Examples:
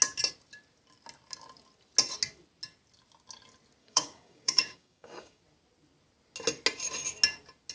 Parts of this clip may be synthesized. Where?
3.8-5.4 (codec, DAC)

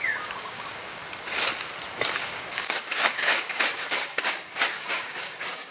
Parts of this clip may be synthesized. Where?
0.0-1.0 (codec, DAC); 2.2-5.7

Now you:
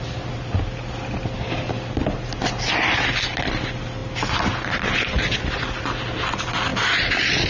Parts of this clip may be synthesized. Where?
none

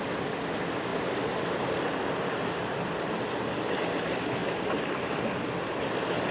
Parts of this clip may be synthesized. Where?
none

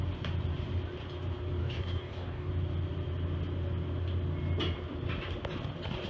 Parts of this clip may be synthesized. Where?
1.6-2.5 (codec, DAC)

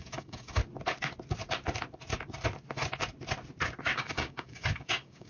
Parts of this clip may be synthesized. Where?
0.0-0.6 (codec, DAC); 3.8-5.3

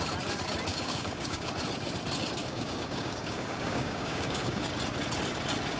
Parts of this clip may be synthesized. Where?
0.7-1.5 (codec, DAC); 2.4-4.7